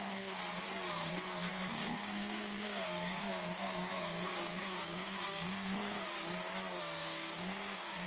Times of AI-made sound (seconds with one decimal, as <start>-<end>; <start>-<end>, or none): 0.0-0.4; 1.1-6.1; 6.8-8.1